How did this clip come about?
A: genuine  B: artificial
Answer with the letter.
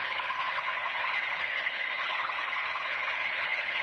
B